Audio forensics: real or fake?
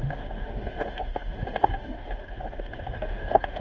fake